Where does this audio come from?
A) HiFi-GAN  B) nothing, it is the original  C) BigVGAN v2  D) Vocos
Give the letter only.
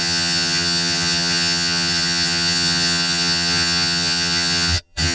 A